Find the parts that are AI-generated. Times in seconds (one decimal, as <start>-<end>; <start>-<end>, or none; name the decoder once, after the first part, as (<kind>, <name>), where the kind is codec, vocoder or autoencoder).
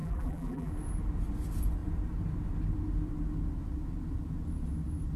0.0-0.7 (vocoder, BigVGAN v2)